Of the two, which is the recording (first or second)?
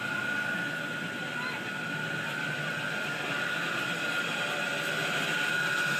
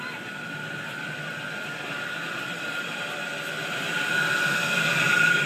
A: first